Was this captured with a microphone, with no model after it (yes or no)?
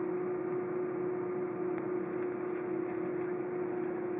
yes